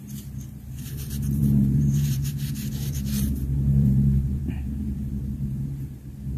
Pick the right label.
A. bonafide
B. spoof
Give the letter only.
B